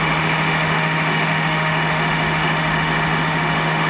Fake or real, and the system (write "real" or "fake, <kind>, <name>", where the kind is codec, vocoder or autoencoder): fake, autoencoder, DAC-VAE